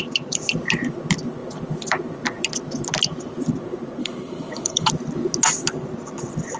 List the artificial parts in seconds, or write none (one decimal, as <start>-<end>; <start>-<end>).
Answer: 4.0-4.9